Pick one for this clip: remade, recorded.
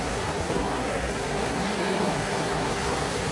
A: remade